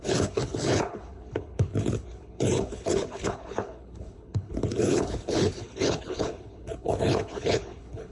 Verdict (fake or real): fake